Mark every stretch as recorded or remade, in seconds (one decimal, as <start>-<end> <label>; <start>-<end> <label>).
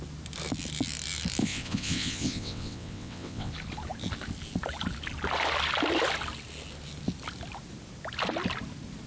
0.0-1.4 recorded; 1.4-3.5 remade; 3.5-9.1 recorded